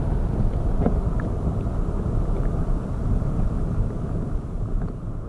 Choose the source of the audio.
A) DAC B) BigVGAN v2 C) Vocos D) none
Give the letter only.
B